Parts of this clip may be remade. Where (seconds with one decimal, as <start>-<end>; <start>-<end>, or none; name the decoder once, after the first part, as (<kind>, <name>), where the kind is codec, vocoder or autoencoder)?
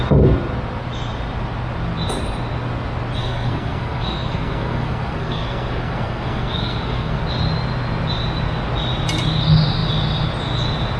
3.2-7.2 (codec, SNAC)